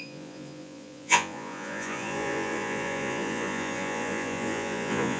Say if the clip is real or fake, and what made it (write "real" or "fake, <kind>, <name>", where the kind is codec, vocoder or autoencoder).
fake, vocoder, Vocos